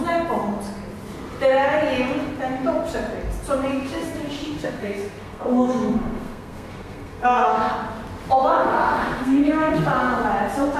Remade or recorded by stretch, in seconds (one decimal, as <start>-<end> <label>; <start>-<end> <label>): 0.0-3.7 recorded; 3.7-7.7 remade; 7.7-8.5 recorded; 8.5-9.8 remade; 9.8-10.8 recorded